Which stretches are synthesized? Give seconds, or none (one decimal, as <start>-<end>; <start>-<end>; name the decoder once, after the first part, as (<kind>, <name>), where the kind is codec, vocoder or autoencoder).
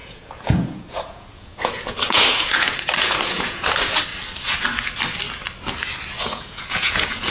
0.0-4.1 (vocoder, Vocos); 6.2-7.3